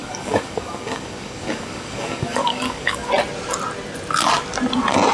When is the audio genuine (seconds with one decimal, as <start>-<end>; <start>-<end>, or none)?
3.1-5.1

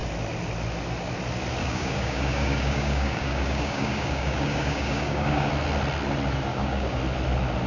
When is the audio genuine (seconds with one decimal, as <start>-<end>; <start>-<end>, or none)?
0.0-1.6; 5.5-6.5; 7.0-7.7